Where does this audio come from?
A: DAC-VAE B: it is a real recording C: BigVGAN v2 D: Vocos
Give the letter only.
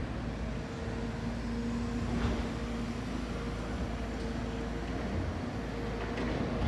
B